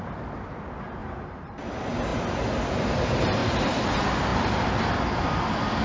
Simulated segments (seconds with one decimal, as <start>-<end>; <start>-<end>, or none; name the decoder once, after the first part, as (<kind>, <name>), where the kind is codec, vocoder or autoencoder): 1.0-1.7 (vocoder, BigVGAN v2); 3.4-3.9